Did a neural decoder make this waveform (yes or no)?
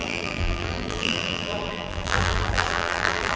yes